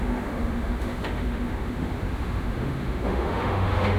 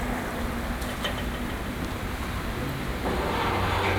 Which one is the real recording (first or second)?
second